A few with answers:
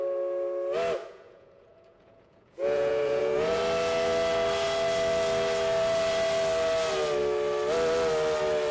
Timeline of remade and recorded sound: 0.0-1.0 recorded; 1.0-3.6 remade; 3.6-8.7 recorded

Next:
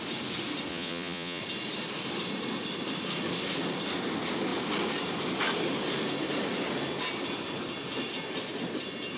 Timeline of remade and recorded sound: 0.0-0.7 recorded; 0.7-1.4 remade; 1.4-9.2 recorded

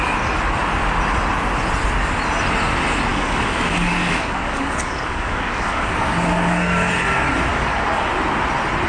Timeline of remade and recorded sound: 0.0-3.1 recorded; 3.1-6.9 remade; 6.9-7.5 recorded; 7.5-8.1 remade; 8.1-8.9 recorded